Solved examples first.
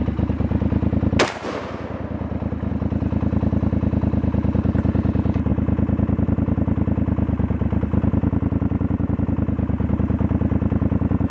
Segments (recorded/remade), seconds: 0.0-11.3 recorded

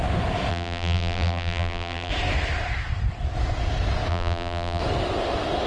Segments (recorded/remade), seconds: 0.0-0.5 recorded; 0.5-2.1 remade; 2.1-4.1 recorded; 4.1-4.8 remade; 4.8-5.7 recorded

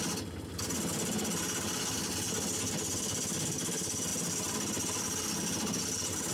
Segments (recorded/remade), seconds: 0.0-6.3 recorded

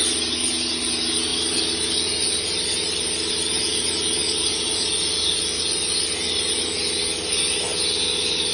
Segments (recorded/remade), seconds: 0.0-8.5 recorded

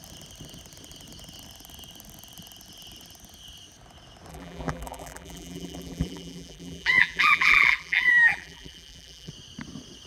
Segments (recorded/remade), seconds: 0.0-4.3 recorded; 4.3-9.3 remade; 9.3-10.1 recorded

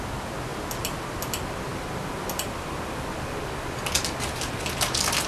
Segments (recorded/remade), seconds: 0.0-0.5 recorded; 0.5-1.0 remade; 1.0-5.3 recorded